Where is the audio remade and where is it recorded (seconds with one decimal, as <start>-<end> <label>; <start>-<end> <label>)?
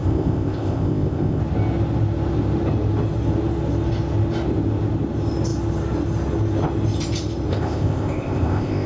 0.0-1.4 remade; 1.4-7.5 recorded; 7.5-8.9 remade